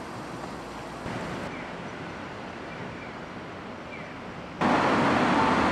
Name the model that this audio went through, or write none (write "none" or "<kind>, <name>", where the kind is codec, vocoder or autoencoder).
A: none